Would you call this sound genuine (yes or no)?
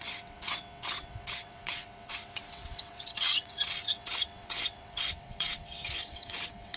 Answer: no